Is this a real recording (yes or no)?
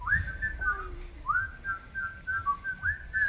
yes